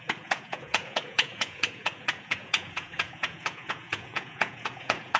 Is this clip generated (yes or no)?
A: yes